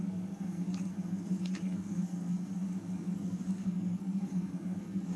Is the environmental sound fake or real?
fake